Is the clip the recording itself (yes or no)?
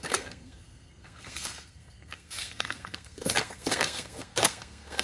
no